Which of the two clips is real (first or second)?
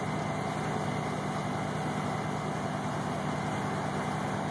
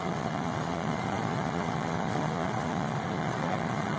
first